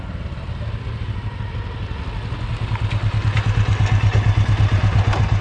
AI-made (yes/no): no